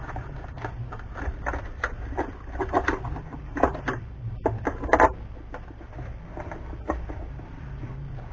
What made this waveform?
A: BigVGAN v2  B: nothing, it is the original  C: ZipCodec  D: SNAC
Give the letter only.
A